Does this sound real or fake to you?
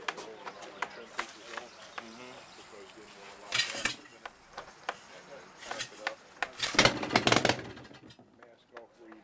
real